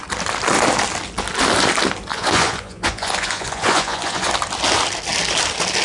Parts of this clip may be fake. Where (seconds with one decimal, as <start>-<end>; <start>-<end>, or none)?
2.1-4.3